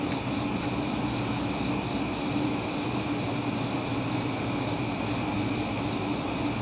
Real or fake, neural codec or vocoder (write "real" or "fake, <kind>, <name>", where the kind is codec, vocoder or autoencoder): real